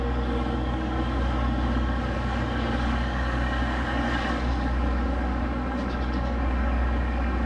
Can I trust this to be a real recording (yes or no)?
no